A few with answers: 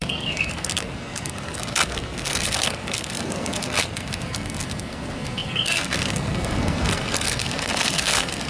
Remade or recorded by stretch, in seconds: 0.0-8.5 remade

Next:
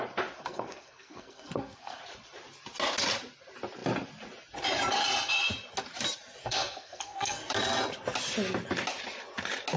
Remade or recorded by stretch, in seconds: 0.0-0.4 recorded; 0.4-2.0 remade; 2.0-6.4 recorded; 6.4-7.4 remade; 7.4-9.8 recorded

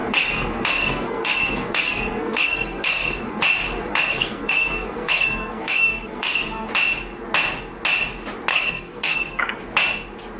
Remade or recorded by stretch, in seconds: 0.0-3.4 remade; 3.4-3.9 recorded; 3.9-6.7 remade; 6.7-8.5 recorded; 8.5-9.6 remade; 9.6-10.4 recorded

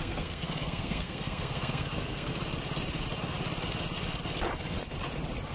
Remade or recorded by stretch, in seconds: 0.0-2.3 remade; 2.3-5.5 recorded